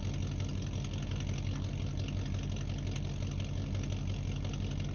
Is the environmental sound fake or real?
real